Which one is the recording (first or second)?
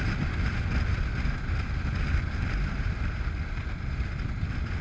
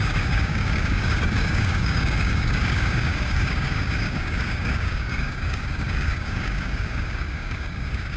first